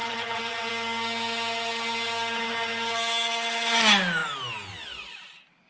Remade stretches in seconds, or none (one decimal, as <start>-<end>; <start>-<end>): 0.0-0.7